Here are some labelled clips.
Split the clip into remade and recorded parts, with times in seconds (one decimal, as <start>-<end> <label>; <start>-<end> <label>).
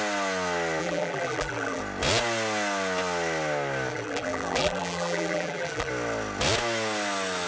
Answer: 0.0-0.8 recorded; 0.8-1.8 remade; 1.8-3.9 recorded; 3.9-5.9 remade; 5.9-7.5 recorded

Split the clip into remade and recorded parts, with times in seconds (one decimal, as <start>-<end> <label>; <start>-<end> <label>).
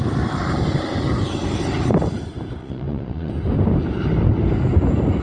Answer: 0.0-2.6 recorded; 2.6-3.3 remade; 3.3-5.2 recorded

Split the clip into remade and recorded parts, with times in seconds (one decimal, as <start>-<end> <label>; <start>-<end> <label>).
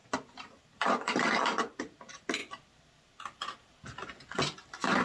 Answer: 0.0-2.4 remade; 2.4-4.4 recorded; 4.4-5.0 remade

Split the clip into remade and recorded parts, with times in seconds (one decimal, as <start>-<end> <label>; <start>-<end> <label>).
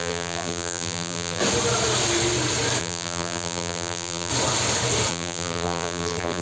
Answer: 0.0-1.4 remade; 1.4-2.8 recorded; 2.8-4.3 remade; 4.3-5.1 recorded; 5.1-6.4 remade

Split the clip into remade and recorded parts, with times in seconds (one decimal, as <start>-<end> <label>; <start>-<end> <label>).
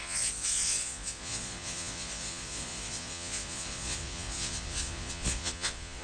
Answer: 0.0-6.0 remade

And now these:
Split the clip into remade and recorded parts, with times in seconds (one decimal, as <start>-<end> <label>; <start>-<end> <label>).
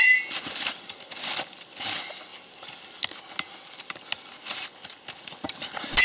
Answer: 0.0-6.0 recorded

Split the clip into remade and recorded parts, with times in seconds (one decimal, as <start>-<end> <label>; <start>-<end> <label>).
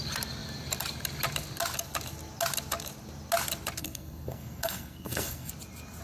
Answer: 0.0-3.8 recorded; 3.8-5.5 remade; 5.5-6.0 recorded